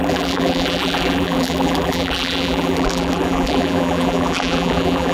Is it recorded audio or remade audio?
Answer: remade